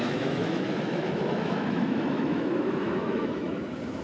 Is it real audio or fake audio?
fake